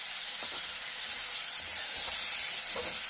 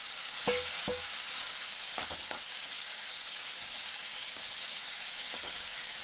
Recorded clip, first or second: first